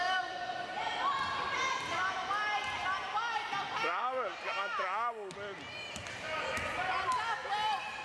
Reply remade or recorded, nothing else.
recorded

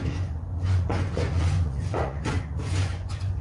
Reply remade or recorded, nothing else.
remade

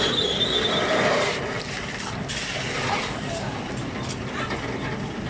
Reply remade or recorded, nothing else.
recorded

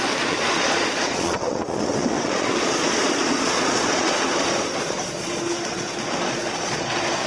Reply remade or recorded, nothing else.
remade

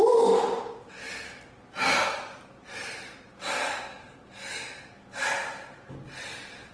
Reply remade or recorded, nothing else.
recorded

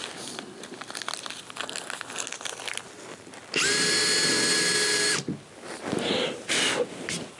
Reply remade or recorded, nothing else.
recorded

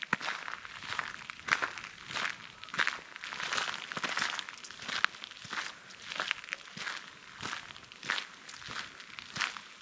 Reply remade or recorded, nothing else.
recorded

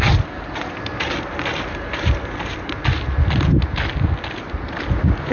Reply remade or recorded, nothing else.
recorded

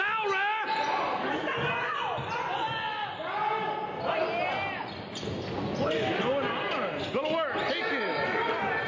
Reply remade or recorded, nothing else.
recorded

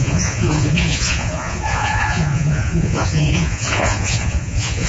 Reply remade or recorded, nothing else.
remade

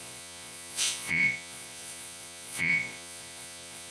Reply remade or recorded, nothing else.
remade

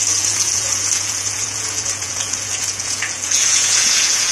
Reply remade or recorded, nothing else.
remade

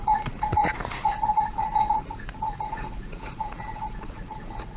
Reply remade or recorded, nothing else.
remade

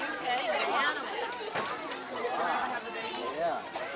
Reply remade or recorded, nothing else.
recorded